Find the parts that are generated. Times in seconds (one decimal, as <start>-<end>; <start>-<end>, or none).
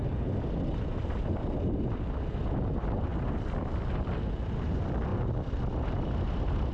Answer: none